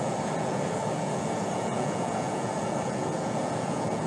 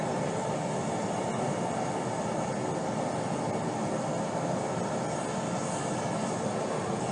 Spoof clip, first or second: first